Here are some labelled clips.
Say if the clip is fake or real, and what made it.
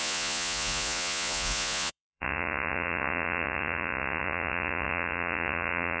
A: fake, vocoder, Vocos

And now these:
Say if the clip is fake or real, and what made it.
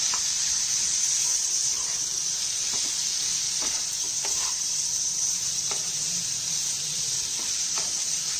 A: fake, vocoder, BigVGAN v2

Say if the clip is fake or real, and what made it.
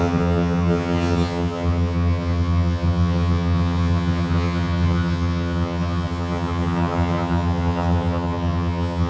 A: fake, vocoder, HiFi-GAN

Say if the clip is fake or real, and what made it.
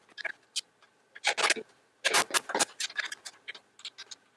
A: real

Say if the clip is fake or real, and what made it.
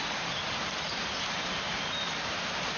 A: real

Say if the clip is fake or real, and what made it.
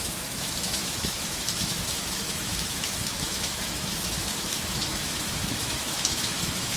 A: fake, autoencoder, DAC-VAE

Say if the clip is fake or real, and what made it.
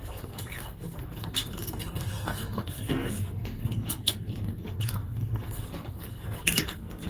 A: fake, codec, SNAC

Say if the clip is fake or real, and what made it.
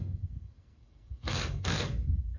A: fake, codec, SNAC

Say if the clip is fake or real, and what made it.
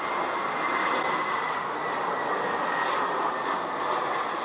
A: real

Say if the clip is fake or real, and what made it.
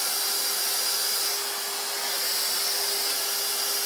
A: real